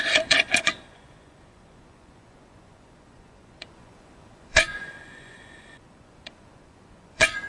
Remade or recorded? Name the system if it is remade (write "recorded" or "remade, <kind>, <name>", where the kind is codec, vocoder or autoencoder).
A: remade, vocoder, Vocos